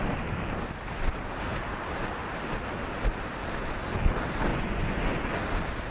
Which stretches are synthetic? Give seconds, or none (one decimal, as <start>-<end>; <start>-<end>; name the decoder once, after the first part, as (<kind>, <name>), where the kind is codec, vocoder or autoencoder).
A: 4.5-5.0 (vocoder, Vocos)